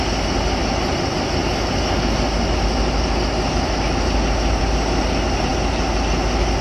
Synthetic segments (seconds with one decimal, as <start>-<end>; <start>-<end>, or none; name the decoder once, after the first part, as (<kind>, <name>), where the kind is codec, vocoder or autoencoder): none